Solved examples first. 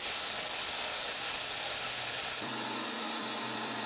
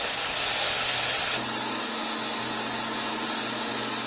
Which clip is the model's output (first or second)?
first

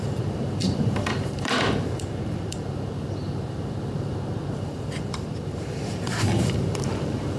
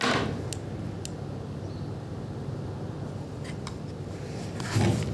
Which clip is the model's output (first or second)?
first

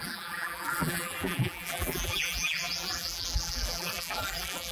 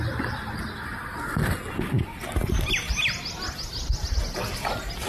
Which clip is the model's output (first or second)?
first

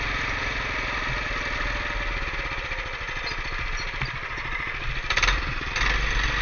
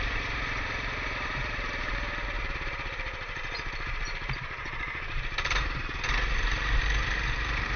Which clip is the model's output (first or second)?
second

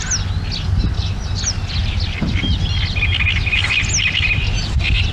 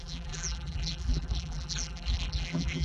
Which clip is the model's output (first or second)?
second